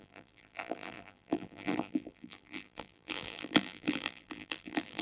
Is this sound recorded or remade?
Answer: remade